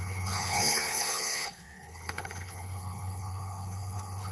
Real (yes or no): no